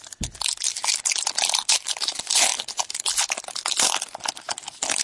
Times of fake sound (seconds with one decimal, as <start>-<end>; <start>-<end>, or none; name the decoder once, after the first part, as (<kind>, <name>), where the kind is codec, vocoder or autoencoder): none